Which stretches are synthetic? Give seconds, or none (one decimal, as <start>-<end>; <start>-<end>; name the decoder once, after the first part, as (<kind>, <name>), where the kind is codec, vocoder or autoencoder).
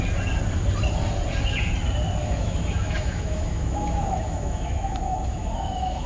2.2-6.1 (autoencoder, DAC-VAE)